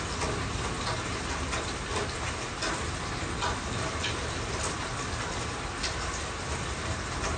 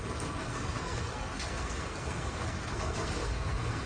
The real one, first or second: first